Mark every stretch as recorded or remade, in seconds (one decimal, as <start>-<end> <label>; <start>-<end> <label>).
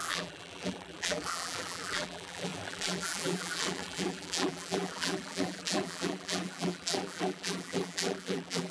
0.0-8.7 remade